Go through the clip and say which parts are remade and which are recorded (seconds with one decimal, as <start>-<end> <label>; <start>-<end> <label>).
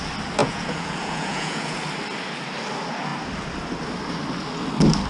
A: 0.0-0.4 recorded; 0.4-1.8 remade; 1.8-5.1 recorded